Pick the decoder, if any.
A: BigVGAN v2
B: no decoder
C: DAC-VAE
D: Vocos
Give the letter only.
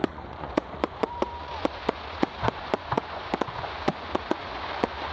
D